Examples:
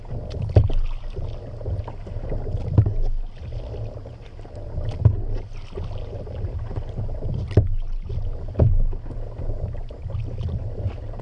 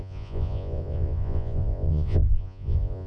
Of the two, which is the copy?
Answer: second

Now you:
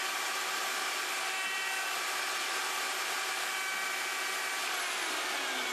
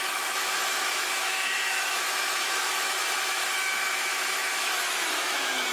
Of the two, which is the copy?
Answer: second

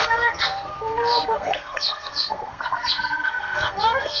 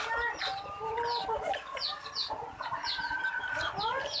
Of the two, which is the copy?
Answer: first